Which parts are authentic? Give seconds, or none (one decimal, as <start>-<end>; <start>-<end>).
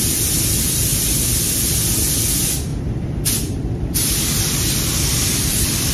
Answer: 0.9-1.5; 2.7-3.3